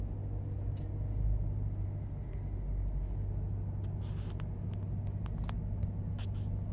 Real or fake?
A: real